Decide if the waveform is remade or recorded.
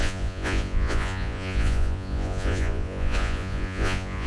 remade